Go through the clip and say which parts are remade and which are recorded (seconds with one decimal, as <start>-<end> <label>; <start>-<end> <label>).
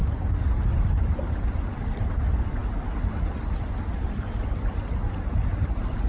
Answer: 0.0-6.1 recorded